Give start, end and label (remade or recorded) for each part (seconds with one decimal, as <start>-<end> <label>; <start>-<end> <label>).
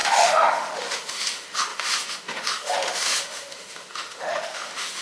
0.0-5.0 remade